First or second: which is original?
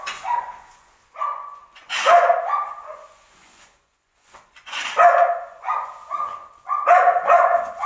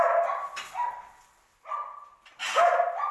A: second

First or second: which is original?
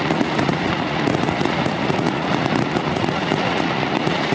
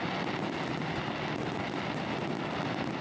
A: second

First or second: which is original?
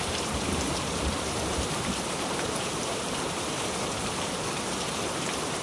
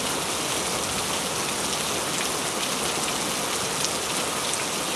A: second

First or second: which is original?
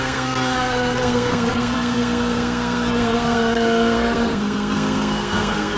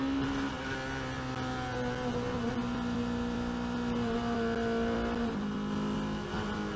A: second